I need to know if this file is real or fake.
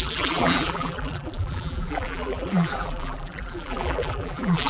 fake